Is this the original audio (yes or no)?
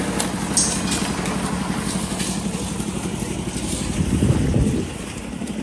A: yes